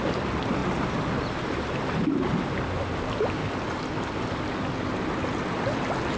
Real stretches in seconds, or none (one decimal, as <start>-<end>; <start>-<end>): 0.0-6.2